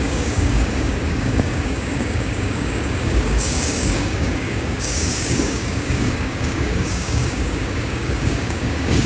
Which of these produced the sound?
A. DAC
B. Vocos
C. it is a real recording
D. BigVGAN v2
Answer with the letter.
A